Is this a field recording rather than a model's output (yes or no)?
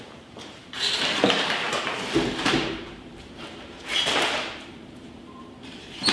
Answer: no